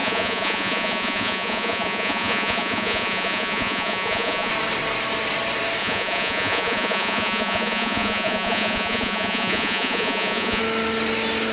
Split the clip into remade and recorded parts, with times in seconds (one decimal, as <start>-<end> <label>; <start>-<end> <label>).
0.0-4.5 remade; 4.5-5.8 recorded; 5.8-10.6 remade; 10.6-11.5 recorded